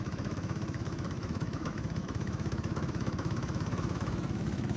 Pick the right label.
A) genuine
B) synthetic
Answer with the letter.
B